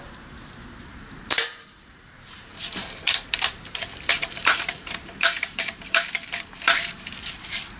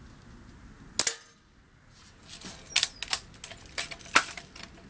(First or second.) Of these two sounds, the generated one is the first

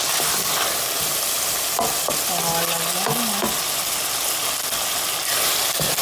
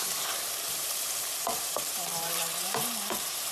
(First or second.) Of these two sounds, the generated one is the second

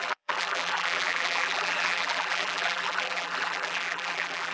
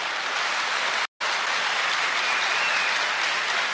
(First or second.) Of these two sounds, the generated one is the first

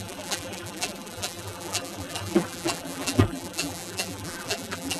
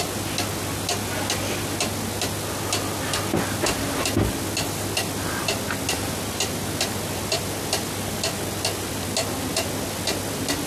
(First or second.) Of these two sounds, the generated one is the first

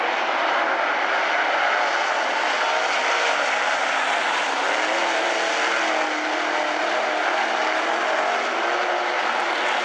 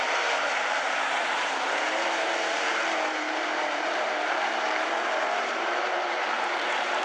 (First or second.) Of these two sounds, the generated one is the second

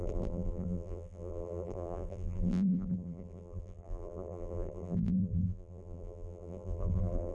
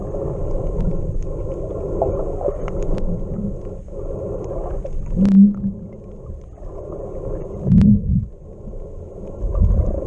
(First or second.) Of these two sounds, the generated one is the first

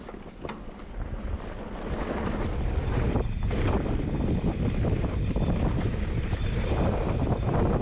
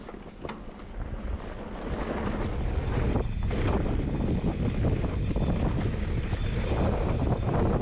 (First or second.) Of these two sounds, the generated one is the first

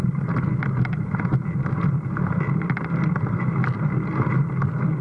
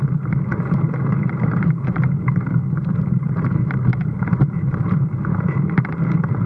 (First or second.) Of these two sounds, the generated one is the second